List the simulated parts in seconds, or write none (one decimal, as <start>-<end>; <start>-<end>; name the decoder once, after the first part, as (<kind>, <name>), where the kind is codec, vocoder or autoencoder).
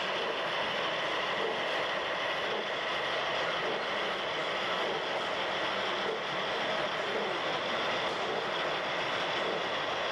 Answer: none